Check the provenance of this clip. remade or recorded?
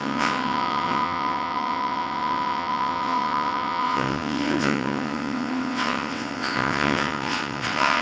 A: remade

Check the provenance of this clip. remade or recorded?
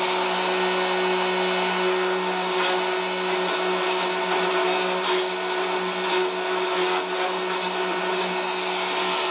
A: recorded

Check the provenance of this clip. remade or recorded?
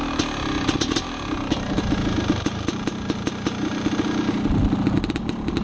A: recorded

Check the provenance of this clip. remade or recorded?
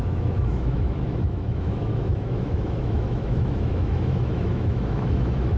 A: remade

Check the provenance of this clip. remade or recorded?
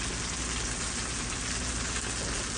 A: recorded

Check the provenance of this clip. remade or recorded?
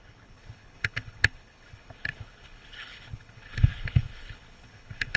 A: remade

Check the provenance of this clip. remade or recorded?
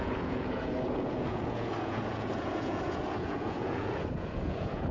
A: remade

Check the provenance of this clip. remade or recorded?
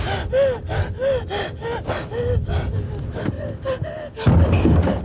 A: recorded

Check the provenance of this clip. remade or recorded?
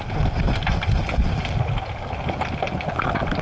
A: recorded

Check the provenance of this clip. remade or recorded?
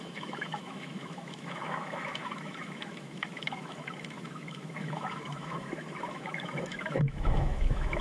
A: remade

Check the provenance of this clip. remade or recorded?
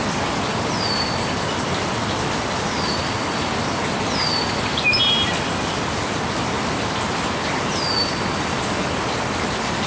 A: recorded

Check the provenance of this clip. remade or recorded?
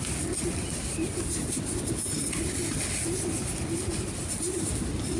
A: recorded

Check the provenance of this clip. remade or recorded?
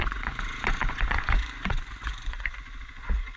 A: remade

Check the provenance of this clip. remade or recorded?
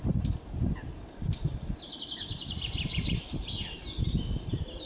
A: recorded